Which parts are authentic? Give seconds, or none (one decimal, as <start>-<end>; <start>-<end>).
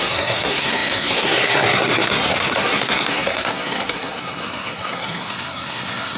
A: none